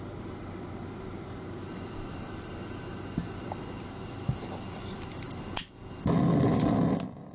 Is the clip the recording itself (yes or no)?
yes